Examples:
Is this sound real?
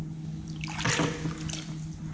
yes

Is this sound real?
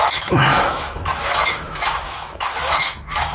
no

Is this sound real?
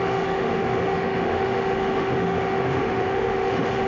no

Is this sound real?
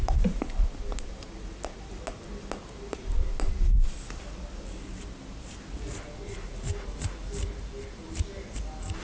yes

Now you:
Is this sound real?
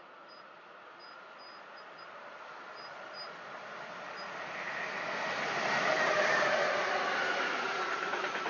yes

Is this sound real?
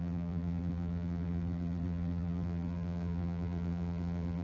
no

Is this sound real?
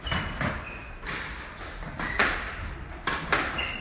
yes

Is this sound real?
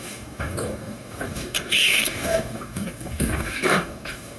no